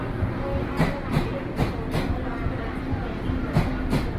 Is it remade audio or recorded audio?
recorded